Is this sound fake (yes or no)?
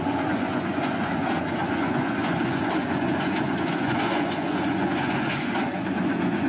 yes